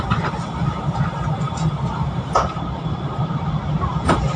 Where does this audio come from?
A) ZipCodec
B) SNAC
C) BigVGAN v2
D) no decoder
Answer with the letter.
C